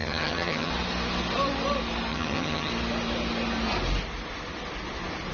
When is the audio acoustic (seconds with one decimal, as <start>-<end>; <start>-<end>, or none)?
0.7-2.1; 2.7-5.3